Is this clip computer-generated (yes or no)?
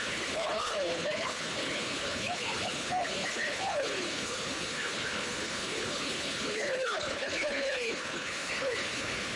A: yes